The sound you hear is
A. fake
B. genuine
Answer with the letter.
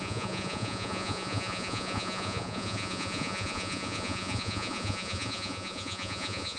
A